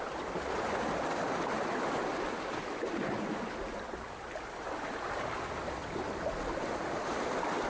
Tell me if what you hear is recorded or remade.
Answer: recorded